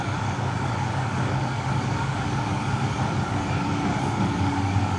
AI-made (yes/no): yes